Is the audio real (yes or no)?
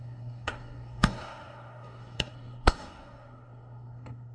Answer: no